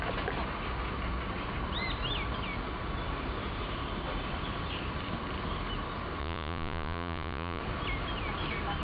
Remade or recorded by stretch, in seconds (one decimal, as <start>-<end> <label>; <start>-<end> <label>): 0.0-6.2 recorded; 6.2-7.6 remade; 7.6-8.8 recorded